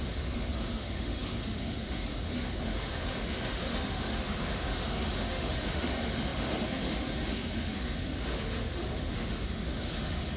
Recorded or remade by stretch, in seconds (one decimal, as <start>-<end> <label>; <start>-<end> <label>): 0.0-10.4 remade